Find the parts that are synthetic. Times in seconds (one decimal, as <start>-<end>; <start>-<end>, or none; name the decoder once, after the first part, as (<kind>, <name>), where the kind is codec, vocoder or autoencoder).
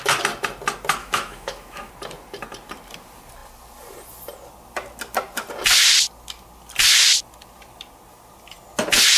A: 1.0-1.9 (autoencoder, DAC-VAE)